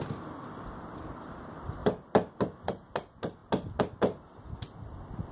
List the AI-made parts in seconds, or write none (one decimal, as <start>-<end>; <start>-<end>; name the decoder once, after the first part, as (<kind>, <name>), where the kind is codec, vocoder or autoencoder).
1.8-2.3 (vocoder, BigVGAN v2)